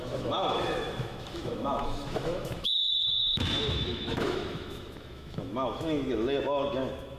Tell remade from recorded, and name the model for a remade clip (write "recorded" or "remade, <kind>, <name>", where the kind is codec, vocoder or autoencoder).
remade, autoencoder, DAC-VAE